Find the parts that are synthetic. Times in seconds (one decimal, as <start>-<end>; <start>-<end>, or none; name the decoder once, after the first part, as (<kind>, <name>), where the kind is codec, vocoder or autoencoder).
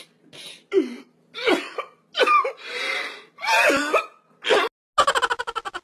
none